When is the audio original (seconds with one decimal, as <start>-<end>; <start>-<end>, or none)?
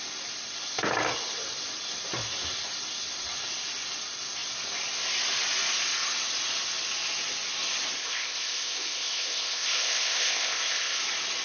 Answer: 0.0-8.0; 11.0-11.4